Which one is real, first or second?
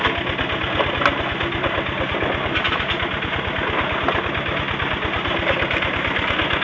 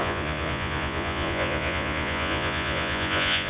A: first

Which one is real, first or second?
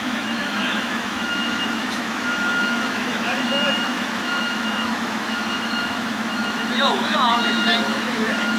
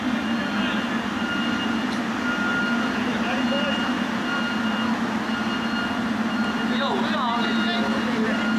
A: second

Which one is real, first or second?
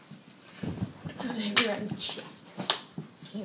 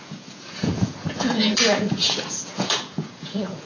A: first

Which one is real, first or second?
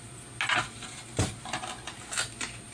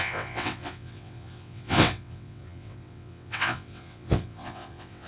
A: first